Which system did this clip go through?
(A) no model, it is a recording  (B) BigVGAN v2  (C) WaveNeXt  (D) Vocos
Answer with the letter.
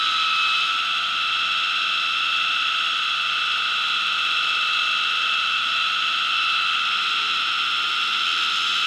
A